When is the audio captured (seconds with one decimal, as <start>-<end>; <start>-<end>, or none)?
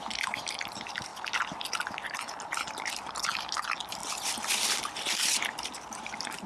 0.0-4.0